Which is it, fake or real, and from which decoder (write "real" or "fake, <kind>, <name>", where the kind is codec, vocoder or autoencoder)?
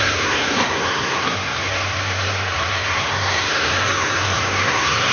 fake, codec, SNAC